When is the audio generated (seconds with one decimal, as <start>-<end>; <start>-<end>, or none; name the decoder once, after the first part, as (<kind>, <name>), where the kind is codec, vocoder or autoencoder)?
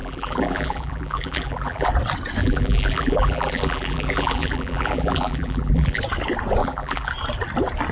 0.0-1.9 (vocoder, BigVGAN v2); 2.4-6.0; 6.6-7.1